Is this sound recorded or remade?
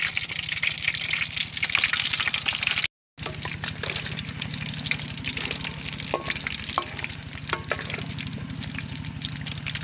recorded